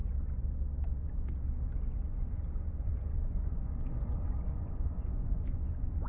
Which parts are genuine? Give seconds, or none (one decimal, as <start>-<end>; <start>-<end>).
0.0-2.1